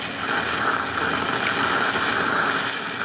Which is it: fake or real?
real